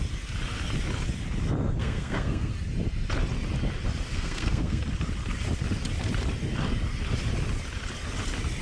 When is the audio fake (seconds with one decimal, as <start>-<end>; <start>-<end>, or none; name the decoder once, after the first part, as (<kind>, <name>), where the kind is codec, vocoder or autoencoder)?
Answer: 1.8-2.5 (codec, SNAC); 4.1-4.8